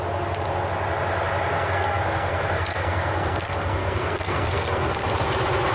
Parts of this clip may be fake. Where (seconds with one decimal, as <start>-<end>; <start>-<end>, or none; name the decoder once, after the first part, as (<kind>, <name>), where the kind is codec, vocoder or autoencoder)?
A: 1.5-4.9 (codec, SNAC)